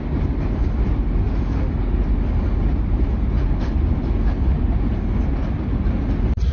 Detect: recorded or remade recorded